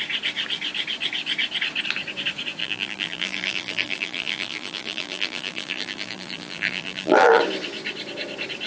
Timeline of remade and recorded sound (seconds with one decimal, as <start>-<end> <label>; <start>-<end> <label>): 0.0-2.6 recorded; 2.6-7.4 remade; 7.4-8.7 recorded

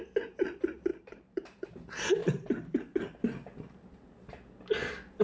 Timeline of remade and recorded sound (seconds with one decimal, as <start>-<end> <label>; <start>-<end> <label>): 0.0-0.9 recorded; 0.9-1.7 remade; 1.7-2.2 recorded; 2.2-2.8 remade; 2.8-5.2 recorded

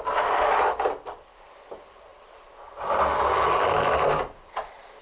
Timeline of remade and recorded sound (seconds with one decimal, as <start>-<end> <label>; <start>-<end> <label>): 0.0-5.0 recorded

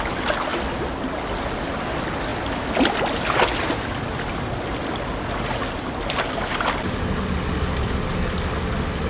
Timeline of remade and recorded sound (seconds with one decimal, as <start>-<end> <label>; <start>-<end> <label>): 0.0-9.1 recorded

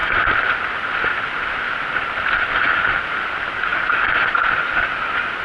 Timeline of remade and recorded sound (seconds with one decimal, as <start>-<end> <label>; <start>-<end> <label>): 0.0-5.4 remade